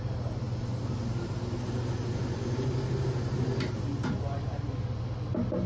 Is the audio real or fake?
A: real